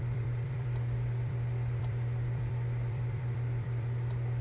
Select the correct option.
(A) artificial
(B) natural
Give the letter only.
A